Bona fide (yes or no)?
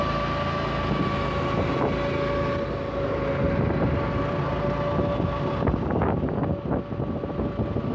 yes